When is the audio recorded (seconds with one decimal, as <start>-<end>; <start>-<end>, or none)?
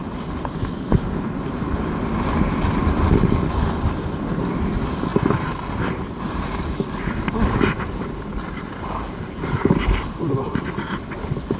0.0-11.6